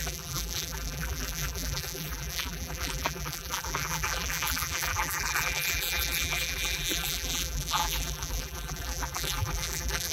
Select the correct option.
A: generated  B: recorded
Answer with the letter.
A